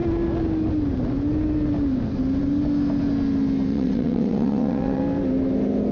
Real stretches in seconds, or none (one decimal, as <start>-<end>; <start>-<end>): 0.0-3.7; 5.0-5.9